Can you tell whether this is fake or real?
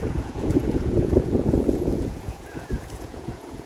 fake